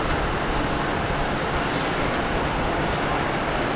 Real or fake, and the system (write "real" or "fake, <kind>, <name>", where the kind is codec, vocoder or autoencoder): real